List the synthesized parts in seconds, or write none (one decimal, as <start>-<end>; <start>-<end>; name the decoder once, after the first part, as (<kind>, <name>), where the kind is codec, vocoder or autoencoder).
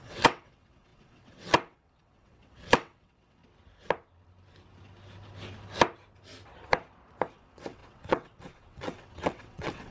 0.0-3.4 (vocoder, WaveNeXt); 7.3-9.9